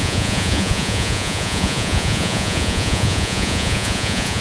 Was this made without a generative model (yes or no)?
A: no